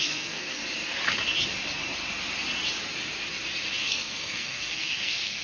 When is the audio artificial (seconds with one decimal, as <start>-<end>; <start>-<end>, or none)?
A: 0.0-0.6; 3.8-5.4